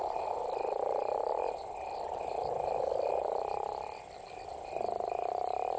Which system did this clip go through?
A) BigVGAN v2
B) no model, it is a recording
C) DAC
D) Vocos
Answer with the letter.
B